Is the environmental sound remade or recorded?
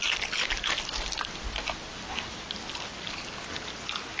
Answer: recorded